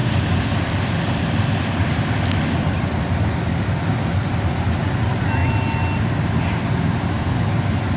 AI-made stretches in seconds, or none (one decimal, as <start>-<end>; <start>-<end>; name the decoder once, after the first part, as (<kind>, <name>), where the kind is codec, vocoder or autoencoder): none